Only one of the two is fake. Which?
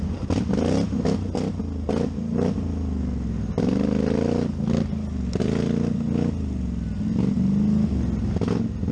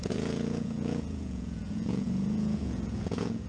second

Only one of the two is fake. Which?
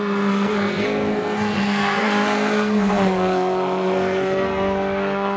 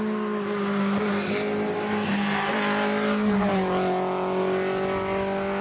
first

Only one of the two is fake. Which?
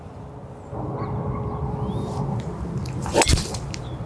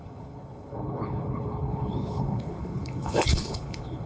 second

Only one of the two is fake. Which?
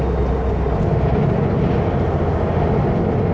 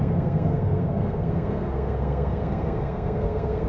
second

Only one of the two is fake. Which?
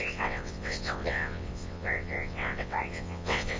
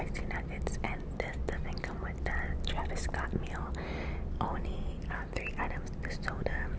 first